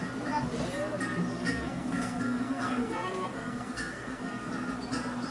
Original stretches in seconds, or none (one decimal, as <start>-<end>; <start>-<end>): 0.0-1.3; 4.5-5.3